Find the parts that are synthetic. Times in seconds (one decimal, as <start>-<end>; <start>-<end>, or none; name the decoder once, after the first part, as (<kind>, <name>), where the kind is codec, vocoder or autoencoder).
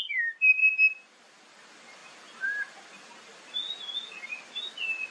none